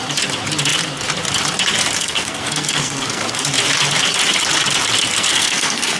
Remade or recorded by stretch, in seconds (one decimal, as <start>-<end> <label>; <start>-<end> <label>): 0.0-2.0 recorded; 2.0-3.4 remade; 3.4-5.1 recorded; 5.1-6.0 remade